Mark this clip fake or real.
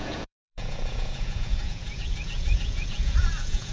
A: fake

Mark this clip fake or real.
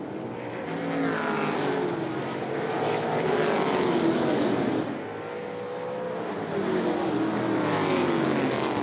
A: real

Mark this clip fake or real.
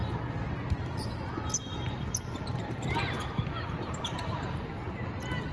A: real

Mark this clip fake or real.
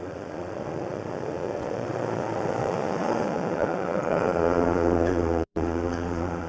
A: fake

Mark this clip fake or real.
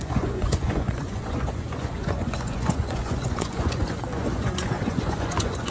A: fake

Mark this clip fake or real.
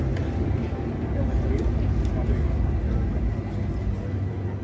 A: real